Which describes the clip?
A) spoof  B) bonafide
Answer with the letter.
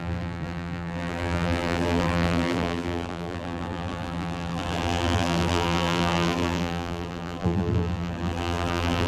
A